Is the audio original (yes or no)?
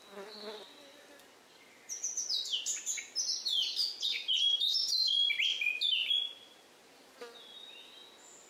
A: yes